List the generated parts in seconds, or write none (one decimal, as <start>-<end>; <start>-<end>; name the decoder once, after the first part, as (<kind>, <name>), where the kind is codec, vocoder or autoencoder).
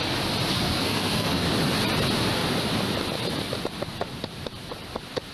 0.5-1.5 (codec, SNAC)